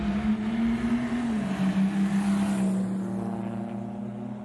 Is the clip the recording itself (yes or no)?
yes